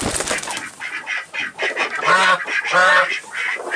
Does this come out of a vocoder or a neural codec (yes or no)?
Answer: no